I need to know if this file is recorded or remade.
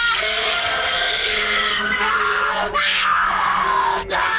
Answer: remade